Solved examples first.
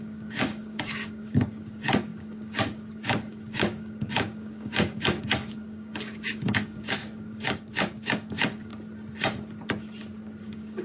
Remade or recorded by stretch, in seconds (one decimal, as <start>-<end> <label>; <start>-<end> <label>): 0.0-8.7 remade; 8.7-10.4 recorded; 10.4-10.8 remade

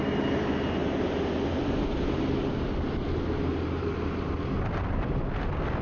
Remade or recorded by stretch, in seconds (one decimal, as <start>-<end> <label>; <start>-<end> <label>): 0.0-5.8 recorded

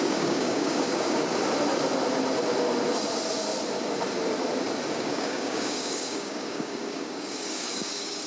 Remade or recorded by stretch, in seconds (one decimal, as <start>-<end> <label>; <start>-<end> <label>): 0.0-1.3 remade; 1.3-4.9 recorded; 4.9-8.3 remade

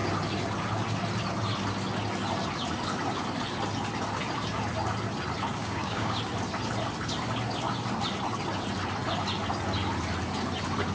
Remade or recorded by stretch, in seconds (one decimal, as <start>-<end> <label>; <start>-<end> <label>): 0.0-5.6 recorded; 5.6-6.2 remade; 6.2-10.9 recorded